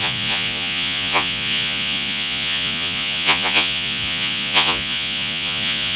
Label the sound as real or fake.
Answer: fake